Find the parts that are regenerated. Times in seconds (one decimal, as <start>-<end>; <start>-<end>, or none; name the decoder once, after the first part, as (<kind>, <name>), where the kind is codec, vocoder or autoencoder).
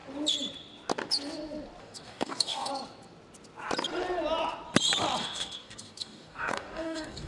1.8-2.7 (codec, DAC); 5.2-7.3